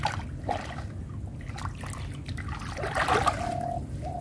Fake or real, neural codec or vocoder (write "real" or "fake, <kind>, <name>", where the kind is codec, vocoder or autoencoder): real